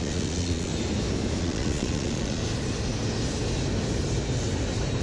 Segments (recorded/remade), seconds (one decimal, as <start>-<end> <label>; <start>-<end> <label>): 0.0-0.7 remade; 0.7-1.4 recorded; 1.4-2.4 remade; 2.4-5.0 recorded